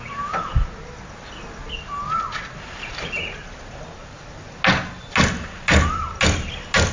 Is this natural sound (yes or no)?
yes